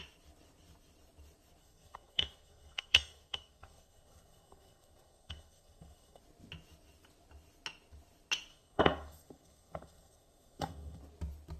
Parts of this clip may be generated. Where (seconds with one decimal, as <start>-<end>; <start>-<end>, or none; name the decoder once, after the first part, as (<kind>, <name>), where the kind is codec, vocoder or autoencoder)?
1.6-6.2 (codec, SNAC); 8.5-11.0